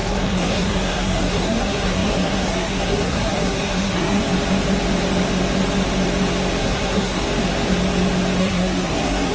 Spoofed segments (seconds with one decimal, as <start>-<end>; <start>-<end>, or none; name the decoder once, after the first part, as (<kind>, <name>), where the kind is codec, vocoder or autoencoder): 0.0-4.2 (codec, SNAC); 6.6-7.2; 8.4-9.3